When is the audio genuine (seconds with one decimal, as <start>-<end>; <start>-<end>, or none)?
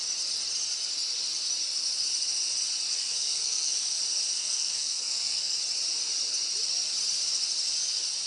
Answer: 0.0-2.9; 4.0-4.4; 5.6-8.3